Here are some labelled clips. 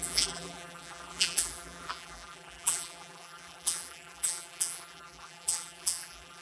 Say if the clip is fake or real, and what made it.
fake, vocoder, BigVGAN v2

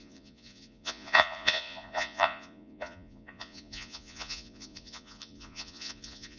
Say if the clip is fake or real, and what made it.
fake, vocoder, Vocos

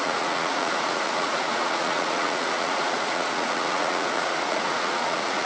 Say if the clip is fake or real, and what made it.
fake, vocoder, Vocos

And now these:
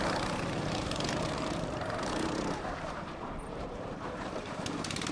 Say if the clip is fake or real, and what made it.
fake, vocoder, BigVGAN v2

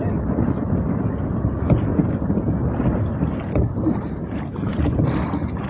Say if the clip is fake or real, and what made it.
real